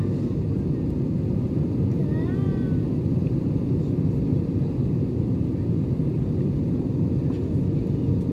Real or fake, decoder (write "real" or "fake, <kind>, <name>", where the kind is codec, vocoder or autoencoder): real